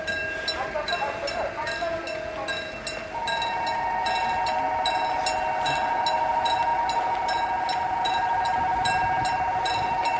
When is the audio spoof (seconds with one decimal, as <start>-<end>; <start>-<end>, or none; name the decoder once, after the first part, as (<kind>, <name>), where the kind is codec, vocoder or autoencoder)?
none